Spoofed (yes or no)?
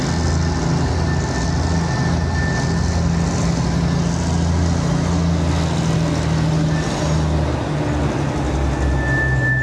no